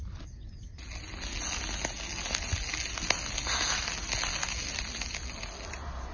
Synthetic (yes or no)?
no